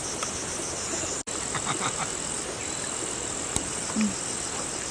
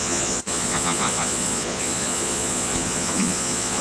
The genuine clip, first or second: first